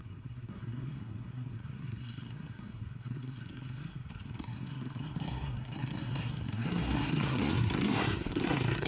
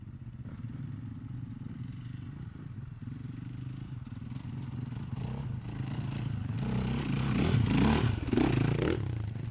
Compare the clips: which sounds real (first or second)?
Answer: second